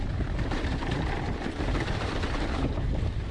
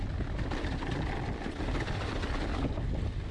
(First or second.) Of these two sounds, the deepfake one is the first